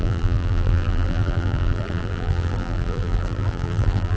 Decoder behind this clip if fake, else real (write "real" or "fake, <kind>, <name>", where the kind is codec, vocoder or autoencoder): fake, vocoder, BigVGAN v2